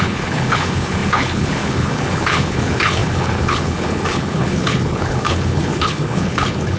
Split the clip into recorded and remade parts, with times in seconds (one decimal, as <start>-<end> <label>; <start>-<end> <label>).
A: 0.0-6.8 remade